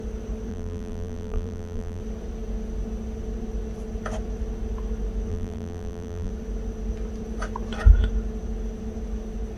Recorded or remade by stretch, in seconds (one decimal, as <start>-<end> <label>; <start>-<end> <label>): 0.0-0.5 recorded; 0.5-2.0 remade; 2.0-5.3 recorded; 5.3-6.3 remade; 6.3-9.6 recorded